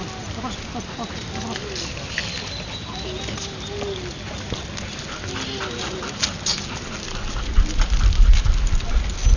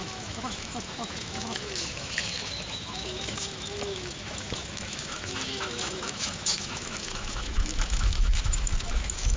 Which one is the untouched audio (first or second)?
first